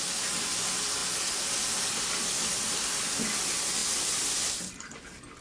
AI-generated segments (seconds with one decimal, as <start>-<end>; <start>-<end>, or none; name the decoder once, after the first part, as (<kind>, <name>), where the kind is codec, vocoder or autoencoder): none